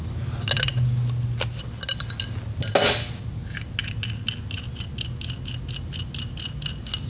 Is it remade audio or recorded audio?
recorded